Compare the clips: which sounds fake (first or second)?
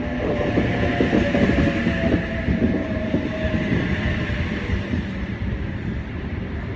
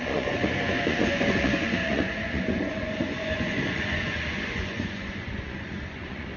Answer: second